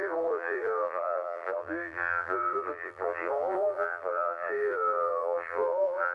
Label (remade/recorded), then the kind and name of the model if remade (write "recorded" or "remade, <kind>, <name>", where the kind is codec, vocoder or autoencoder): remade, vocoder, BigVGAN v2